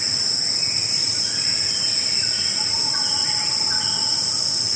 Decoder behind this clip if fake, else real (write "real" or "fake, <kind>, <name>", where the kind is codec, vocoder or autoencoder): real